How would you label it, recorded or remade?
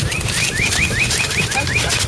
recorded